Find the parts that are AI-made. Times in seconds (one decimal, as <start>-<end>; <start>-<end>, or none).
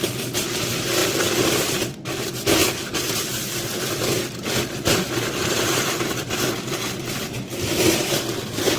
0.0-8.8